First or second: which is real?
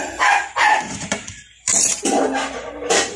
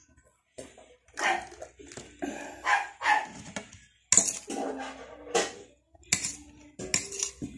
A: second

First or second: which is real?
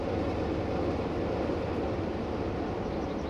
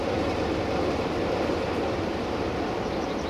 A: first